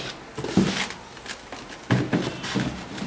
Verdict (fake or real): real